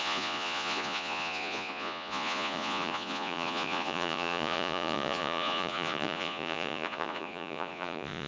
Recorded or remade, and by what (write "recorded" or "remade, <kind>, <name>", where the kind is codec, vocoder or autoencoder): remade, vocoder, Vocos